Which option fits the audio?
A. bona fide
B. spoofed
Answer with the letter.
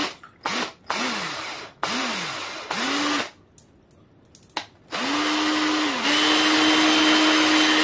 A